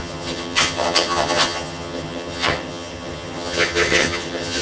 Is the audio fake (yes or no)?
yes